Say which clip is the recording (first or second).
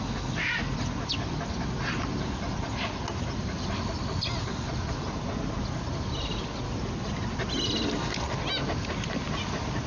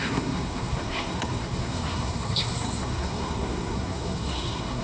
first